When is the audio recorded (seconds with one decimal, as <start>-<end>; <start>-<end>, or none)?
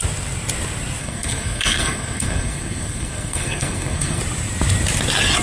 0.0-1.0; 4.2-5.4